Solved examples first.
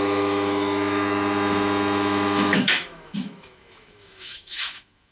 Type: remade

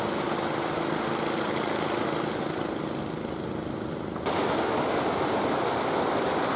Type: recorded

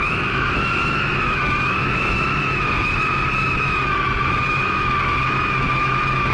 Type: remade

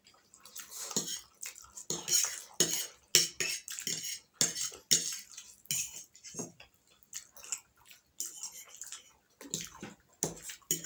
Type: recorded